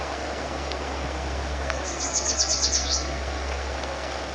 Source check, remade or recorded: remade